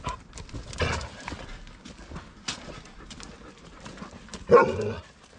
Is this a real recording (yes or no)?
yes